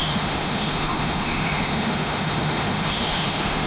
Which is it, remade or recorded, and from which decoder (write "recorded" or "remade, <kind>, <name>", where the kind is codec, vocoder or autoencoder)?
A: remade, autoencoder, DAC-VAE